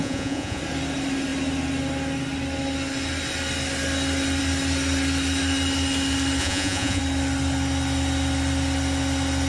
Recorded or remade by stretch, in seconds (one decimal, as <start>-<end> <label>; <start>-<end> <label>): 0.0-0.6 remade; 0.6-6.4 recorded; 6.4-7.0 remade; 7.0-9.5 recorded